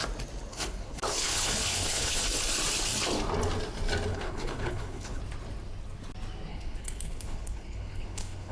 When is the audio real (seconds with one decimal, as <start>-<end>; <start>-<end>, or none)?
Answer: 0.0-0.5; 2.2-4.1; 5.2-6.5